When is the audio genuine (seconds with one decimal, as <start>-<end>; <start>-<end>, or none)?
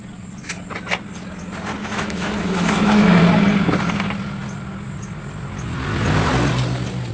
0.0-1.8; 3.2-7.1